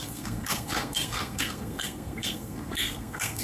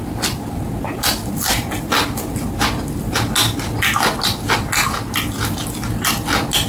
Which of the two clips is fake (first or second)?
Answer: first